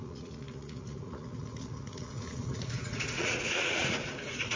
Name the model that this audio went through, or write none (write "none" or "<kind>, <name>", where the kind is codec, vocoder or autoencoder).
vocoder, Vocos